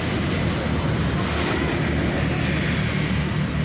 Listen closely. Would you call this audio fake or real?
real